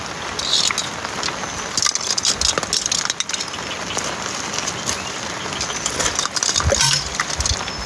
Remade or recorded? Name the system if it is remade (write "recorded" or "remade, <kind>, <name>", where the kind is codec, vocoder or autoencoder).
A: recorded